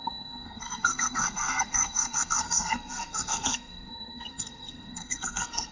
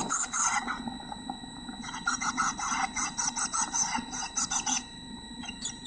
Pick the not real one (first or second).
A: first